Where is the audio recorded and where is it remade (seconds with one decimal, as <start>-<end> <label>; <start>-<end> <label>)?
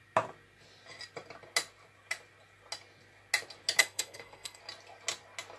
0.0-3.8 recorded; 3.8-4.6 remade; 4.6-5.6 recorded